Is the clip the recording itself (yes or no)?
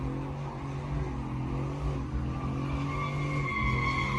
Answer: yes